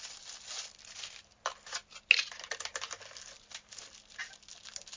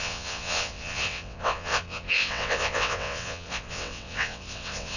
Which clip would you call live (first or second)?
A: first